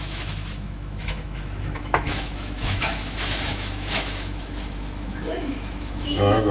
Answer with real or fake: fake